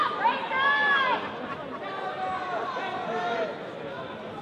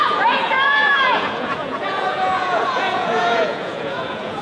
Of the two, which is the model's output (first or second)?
second